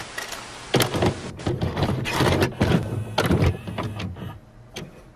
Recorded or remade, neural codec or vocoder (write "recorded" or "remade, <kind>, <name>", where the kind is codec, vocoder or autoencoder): recorded